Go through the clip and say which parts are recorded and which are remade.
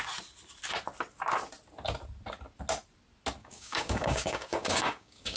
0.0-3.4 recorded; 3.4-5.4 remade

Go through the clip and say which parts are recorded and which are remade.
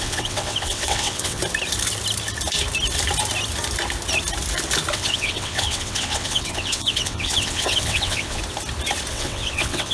0.0-1.4 remade; 1.4-4.9 recorded; 4.9-8.4 remade; 8.4-9.1 recorded; 9.1-9.9 remade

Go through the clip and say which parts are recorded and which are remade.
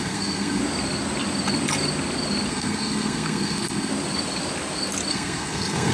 0.0-0.6 remade; 0.6-2.5 recorded; 2.5-3.9 remade; 3.9-5.1 recorded; 5.1-5.9 remade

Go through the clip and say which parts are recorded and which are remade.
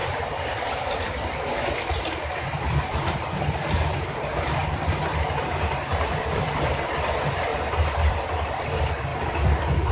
0.0-4.6 remade; 4.6-6.2 recorded; 6.2-7.5 remade; 7.5-8.1 recorded; 8.1-9.1 remade; 9.1-9.9 recorded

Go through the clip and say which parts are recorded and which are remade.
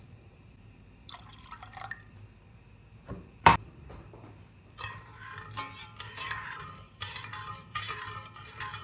0.0-5.2 remade; 5.2-6.1 recorded; 6.1-8.8 remade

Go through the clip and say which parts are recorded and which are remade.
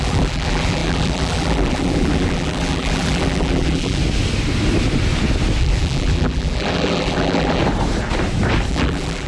0.0-4.0 remade; 4.0-5.6 recorded; 5.6-7.6 remade; 7.6-8.7 recorded; 8.7-9.3 remade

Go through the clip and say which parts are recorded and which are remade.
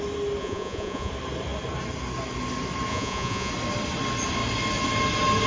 0.0-0.4 recorded; 0.4-1.1 remade; 1.1-2.9 recorded; 2.9-3.5 remade; 3.5-5.5 recorded